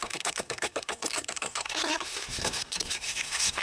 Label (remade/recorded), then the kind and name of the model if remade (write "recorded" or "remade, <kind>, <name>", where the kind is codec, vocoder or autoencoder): remade, codec, SNAC